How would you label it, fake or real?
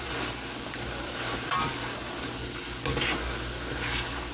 real